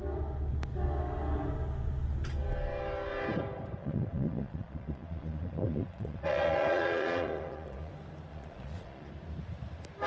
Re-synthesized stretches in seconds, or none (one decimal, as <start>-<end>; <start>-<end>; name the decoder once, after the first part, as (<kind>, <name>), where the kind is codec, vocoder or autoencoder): 3.8-7.9 (vocoder, Vocos); 8.3-9.1

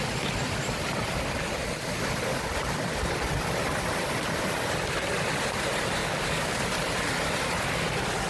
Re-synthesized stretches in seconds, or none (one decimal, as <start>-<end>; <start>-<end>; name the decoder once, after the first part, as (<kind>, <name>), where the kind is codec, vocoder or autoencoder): 6.0-6.6 (codec, DAC)

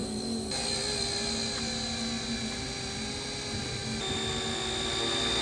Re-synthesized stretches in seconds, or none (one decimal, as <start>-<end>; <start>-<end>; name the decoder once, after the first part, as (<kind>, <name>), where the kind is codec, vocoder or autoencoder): none

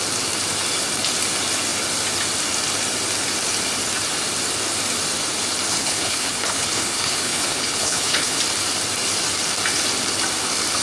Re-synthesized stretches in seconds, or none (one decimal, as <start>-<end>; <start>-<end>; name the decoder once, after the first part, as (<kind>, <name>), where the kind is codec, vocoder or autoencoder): 5.7-8.4 (codec, HILCodec)

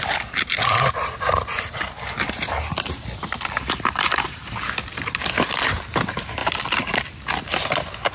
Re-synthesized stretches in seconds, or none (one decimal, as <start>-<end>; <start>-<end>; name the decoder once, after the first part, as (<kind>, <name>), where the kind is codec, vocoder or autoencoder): none